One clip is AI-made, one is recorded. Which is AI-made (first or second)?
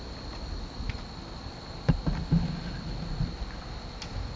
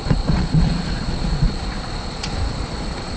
second